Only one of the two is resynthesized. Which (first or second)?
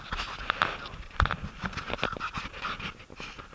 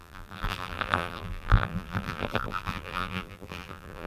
second